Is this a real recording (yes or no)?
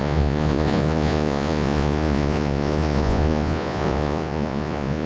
no